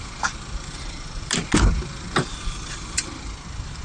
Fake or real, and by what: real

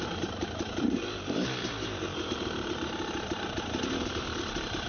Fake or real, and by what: fake, vocoder, BigVGAN v2